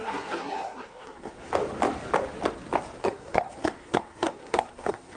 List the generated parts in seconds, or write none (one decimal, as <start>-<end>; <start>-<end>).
0.0-1.5; 3.0-5.2